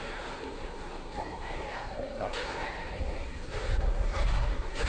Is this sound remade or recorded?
remade